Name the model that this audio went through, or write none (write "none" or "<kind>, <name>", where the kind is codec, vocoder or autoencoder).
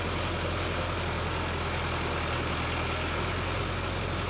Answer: none